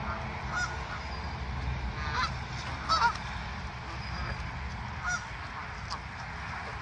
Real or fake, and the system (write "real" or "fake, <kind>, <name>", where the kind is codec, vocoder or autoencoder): real